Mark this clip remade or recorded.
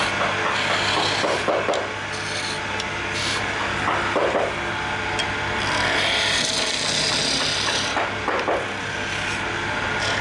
recorded